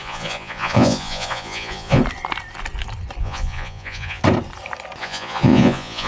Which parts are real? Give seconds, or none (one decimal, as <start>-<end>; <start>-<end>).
2.0-3.2; 4.2-5.0

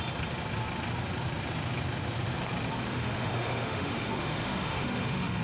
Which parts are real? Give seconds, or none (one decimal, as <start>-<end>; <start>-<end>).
0.0-2.9

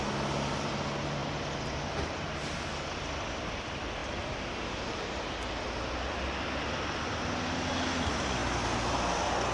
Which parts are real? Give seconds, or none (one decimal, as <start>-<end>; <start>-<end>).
0.0-9.5

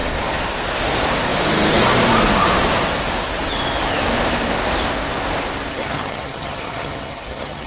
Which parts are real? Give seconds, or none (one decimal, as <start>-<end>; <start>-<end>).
0.0-5.7

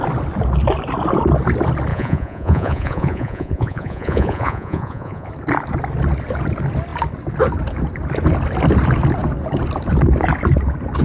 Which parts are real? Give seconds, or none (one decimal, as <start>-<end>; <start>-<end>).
0.0-1.9; 5.3-11.0

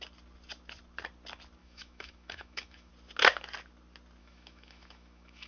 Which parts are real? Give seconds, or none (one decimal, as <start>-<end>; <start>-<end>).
0.0-1.6; 2.9-4.2

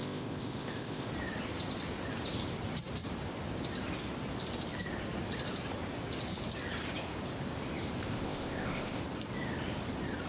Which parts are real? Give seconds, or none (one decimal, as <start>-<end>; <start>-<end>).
1.1-8.0; 9.0-10.3